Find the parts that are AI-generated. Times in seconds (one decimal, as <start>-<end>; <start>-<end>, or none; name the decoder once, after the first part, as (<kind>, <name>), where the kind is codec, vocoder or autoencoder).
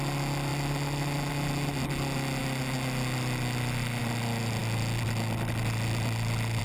none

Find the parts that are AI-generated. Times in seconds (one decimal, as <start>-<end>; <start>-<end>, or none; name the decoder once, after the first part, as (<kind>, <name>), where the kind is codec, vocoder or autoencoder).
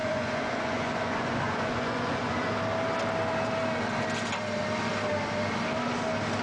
0.0-2.5 (vocoder, Vocos)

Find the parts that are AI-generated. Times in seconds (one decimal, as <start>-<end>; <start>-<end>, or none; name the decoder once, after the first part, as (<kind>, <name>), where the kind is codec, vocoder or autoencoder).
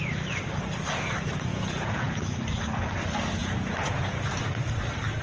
1.5-2.2 (vocoder, Vocos); 3.4-4.3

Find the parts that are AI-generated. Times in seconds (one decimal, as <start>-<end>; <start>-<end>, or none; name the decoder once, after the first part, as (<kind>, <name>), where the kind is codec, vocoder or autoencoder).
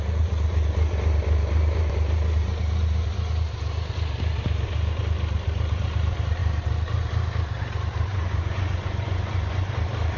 8.1-9.7 (vocoder, Vocos)